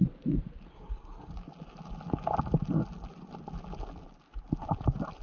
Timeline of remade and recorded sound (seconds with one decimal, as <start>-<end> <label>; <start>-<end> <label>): 0.0-0.7 recorded; 0.7-1.3 remade; 1.3-5.2 recorded